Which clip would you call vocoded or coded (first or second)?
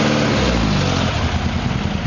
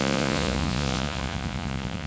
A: second